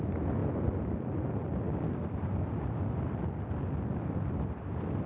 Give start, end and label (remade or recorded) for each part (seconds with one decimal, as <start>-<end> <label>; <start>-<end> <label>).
0.0-5.1 recorded